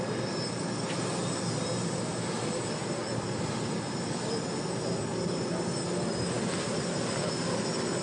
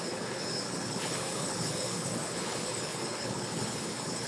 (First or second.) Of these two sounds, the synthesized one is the second